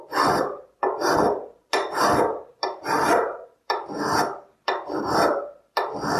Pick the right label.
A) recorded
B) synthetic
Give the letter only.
A